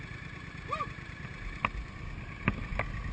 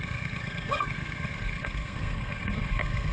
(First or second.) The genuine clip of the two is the first